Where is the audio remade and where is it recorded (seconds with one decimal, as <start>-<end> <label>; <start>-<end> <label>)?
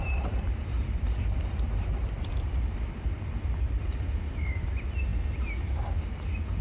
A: 0.0-3.8 remade; 3.8-6.6 recorded